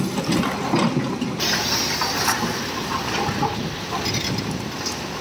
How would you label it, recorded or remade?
recorded